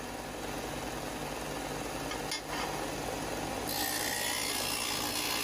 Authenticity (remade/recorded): recorded